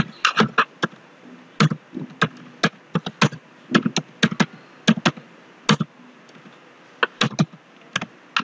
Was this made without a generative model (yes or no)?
yes